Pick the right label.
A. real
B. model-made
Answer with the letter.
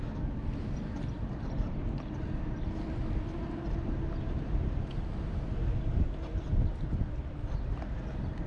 A